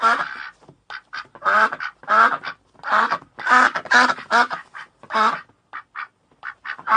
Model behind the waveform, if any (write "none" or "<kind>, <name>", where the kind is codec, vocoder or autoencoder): none